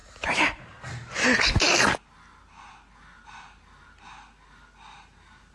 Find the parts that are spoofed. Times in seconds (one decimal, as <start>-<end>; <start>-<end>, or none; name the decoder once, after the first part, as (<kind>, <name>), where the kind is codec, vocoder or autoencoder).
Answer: none